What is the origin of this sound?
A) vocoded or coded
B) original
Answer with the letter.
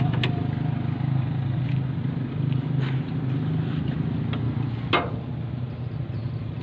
B